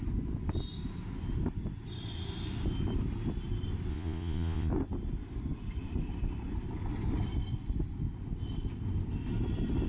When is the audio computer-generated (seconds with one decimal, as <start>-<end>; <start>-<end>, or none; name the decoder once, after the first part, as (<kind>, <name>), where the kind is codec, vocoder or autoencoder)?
3.9-4.7 (vocoder, Vocos)